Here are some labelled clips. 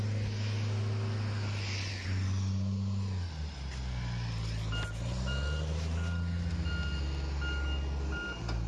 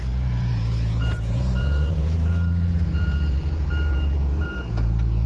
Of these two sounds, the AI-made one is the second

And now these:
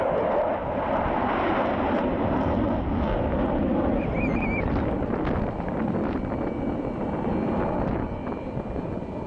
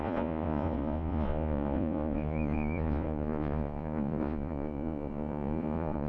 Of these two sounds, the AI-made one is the second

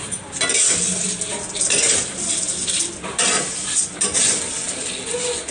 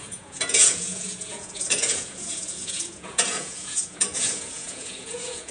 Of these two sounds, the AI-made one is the second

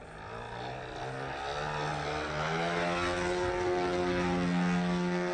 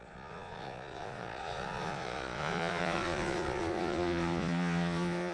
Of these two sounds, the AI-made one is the second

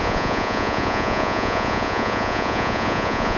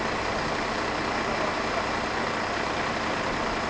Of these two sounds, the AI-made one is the first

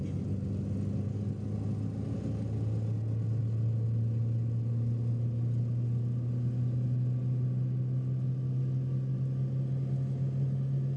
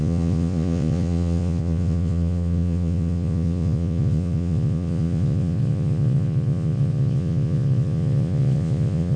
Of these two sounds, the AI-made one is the second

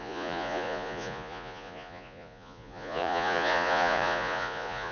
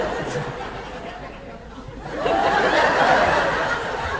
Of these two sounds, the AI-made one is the first